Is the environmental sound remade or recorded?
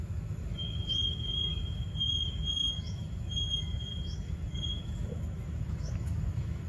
remade